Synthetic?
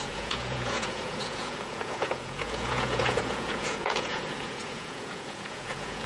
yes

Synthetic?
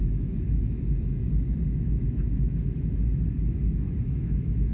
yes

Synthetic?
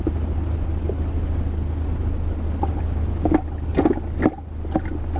no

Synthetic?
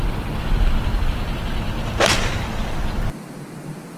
no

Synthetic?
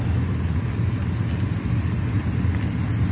no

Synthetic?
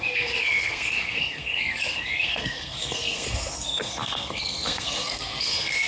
yes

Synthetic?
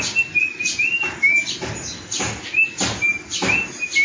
no